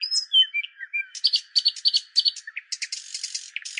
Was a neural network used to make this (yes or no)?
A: no